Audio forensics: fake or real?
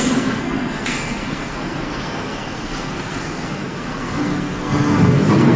fake